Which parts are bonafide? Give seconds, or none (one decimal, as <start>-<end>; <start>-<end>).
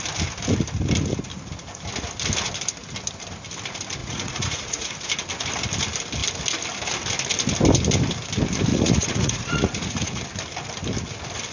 0.0-4.0; 4.9-8.7; 10.2-11.5